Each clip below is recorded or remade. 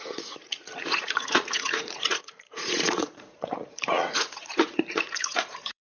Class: remade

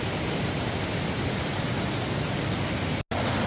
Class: recorded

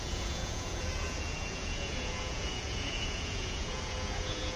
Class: remade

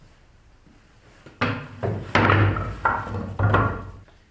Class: recorded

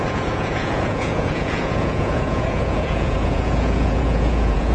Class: remade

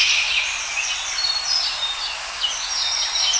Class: recorded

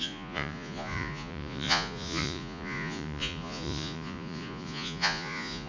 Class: remade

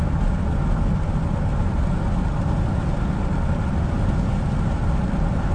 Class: recorded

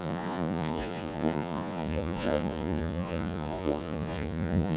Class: remade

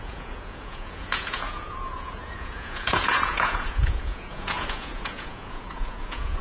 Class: remade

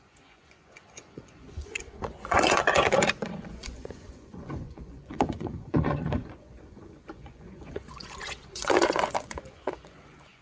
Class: remade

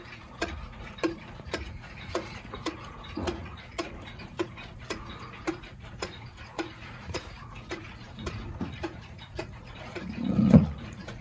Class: remade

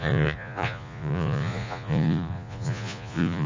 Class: remade